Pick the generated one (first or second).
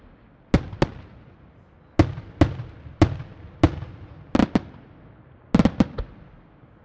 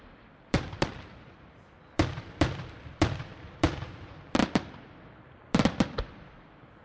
second